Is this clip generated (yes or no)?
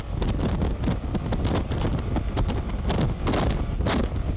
no